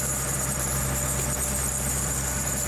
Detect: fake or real real